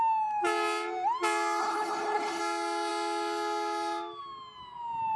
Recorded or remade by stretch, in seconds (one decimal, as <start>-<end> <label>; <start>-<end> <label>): 0.0-1.6 recorded; 1.6-2.4 remade; 2.4-5.2 recorded